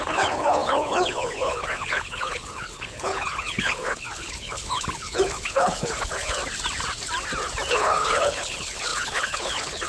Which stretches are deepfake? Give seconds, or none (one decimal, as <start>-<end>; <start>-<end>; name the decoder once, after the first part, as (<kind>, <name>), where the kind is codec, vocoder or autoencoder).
0.0-6.4 (codec, HILCodec); 7.7-9.9